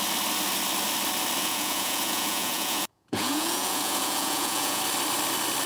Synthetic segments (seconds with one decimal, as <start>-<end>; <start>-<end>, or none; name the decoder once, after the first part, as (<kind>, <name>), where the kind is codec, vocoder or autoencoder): 1.4-4.8 (vocoder, Vocos)